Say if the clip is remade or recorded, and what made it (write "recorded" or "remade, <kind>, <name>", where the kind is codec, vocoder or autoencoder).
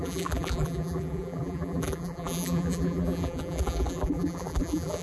remade, vocoder, BigVGAN v2